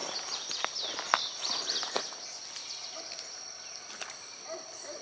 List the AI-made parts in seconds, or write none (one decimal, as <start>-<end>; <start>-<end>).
none